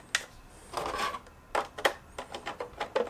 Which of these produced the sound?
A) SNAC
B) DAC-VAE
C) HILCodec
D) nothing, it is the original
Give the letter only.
D